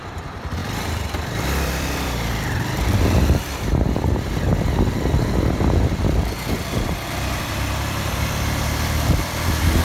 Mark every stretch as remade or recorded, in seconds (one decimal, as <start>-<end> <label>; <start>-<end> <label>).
0.0-4.5 remade; 4.5-5.6 recorded; 5.6-9.8 remade